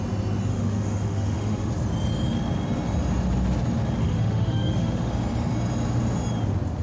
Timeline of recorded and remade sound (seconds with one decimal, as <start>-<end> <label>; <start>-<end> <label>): 0.0-0.5 recorded; 0.5-1.7 remade; 1.7-4.0 recorded; 4.0-5.1 remade; 5.1-6.8 recorded